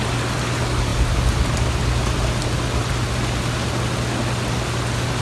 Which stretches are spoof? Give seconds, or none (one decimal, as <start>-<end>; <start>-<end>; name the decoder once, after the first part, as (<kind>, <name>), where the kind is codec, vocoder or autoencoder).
none